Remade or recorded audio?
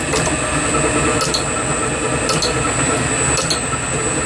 recorded